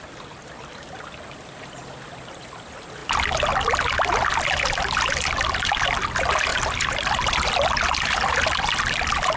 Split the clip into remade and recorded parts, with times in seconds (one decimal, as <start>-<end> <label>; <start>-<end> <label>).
0.0-6.5 recorded; 6.5-8.3 remade; 8.3-9.4 recorded